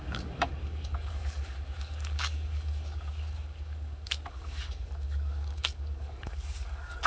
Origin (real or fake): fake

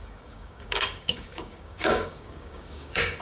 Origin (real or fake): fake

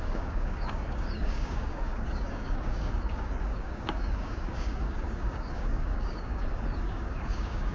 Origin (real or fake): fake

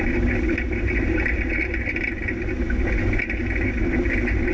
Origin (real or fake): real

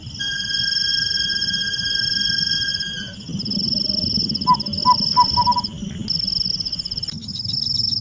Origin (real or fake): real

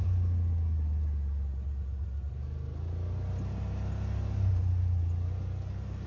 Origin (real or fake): real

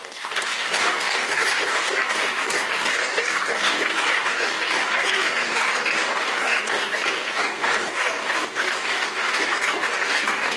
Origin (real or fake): fake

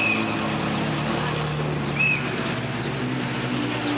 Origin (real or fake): real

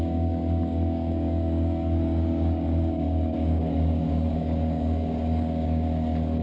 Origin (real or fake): fake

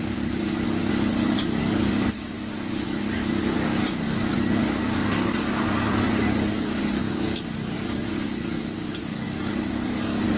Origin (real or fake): fake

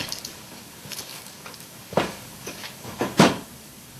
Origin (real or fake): fake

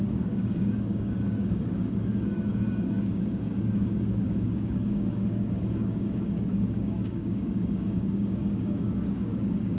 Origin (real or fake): fake